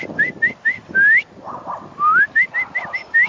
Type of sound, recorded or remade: recorded